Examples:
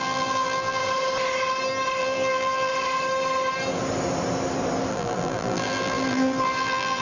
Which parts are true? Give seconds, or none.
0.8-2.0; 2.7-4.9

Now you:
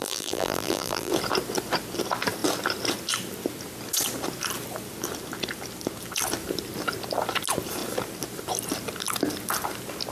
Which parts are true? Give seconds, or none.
1.1-10.1

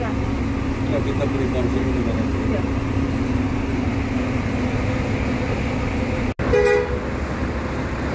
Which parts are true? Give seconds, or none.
0.0-8.1

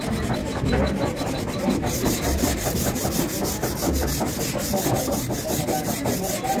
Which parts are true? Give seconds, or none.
0.0-0.4; 4.4-6.6

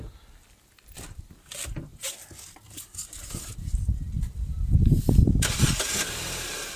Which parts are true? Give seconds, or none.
0.0-6.8

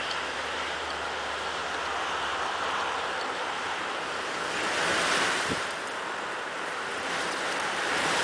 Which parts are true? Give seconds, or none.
1.6-6.5

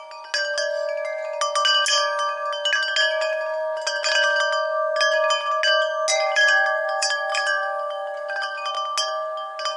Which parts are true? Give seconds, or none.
0.0-6.1; 8.7-9.8